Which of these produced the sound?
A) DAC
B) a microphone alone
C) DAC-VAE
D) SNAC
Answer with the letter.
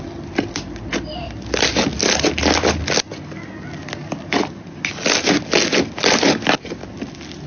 B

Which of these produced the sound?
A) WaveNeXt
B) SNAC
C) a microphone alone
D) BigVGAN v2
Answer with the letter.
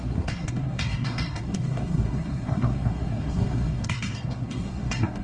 B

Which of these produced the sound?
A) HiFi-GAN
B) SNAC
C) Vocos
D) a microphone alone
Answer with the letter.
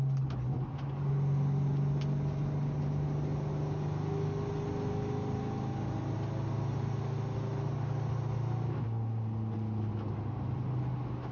D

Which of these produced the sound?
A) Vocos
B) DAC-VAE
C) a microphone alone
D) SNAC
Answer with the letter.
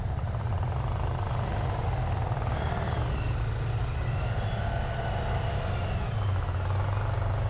C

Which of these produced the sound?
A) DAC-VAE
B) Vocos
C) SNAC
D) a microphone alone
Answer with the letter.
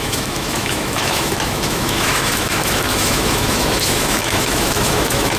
A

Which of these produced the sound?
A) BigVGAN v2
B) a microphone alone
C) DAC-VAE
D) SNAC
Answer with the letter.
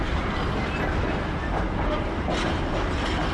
B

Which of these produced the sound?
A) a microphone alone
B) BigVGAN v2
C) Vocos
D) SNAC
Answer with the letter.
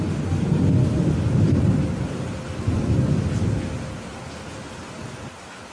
A